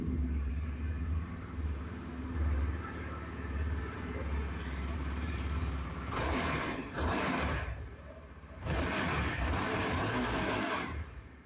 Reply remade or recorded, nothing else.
remade